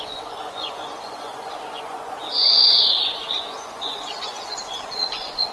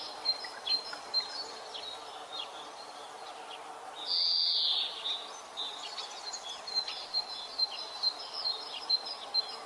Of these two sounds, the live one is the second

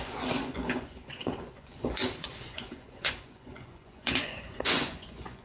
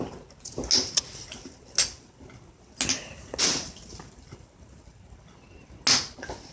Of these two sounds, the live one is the second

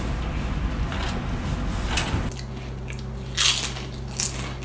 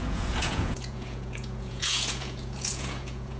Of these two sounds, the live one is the first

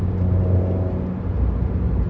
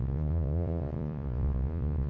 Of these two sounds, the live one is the first